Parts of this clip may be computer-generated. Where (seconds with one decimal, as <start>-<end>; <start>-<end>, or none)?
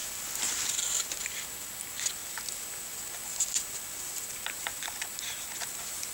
0.7-2.2; 5.0-6.1